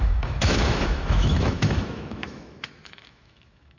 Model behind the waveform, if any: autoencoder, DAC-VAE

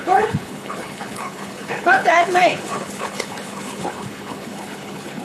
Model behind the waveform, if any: codec, HILCodec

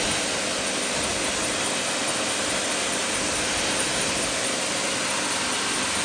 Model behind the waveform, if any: none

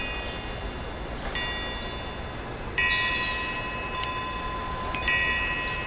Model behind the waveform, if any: none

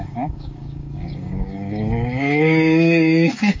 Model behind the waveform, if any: codec, DAC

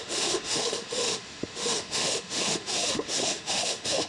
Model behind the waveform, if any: autoencoder, DAC-VAE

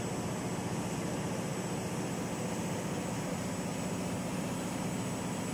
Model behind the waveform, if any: none